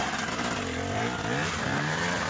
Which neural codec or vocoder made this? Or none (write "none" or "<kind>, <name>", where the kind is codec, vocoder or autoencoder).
vocoder, BigVGAN v2